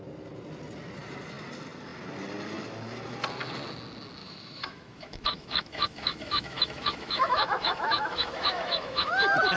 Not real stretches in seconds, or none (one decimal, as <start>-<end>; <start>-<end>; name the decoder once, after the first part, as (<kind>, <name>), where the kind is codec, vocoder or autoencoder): 4.2-9.1 (autoencoder, DAC-VAE)